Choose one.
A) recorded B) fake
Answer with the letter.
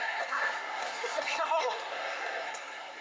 B